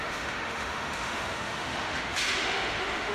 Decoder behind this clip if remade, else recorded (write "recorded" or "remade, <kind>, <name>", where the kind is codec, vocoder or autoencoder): remade, autoencoder, DAC-VAE